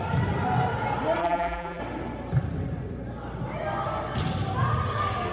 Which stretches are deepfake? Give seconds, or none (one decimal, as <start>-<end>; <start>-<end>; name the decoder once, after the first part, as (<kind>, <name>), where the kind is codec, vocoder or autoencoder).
1.2-1.8 (vocoder, BigVGAN v2)